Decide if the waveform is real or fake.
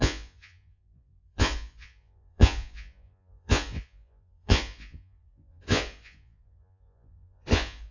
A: fake